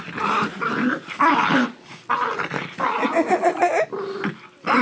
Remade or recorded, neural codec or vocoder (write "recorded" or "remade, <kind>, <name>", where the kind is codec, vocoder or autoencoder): recorded